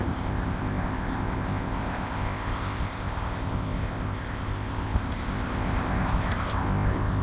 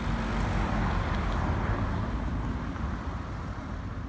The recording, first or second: second